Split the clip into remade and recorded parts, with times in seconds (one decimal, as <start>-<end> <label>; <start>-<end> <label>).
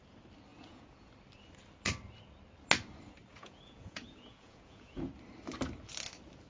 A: 0.0-0.5 recorded; 0.5-1.1 remade; 1.1-3.3 recorded; 3.3-5.1 remade; 5.1-6.5 recorded